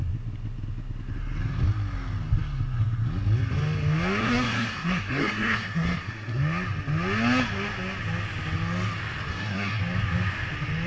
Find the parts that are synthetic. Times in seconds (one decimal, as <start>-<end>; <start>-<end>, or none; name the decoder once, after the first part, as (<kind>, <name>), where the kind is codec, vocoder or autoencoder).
4.2-6.4 (codec, SNAC); 9.3-9.8